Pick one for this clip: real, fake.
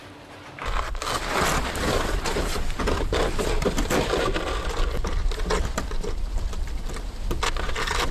real